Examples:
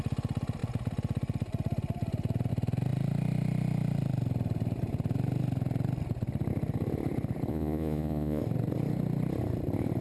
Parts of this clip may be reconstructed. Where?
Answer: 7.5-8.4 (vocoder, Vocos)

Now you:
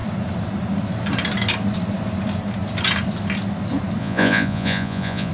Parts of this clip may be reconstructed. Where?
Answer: 4.0-5.3 (vocoder, Vocos)

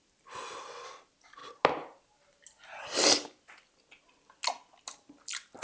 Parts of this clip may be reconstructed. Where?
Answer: none

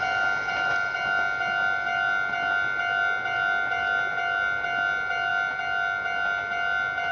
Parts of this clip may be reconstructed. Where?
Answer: none